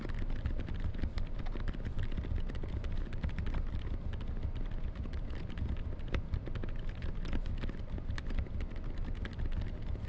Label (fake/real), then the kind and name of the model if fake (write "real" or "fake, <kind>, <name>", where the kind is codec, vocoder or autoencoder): real